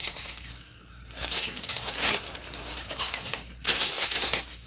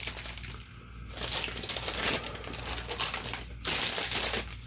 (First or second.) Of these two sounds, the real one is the second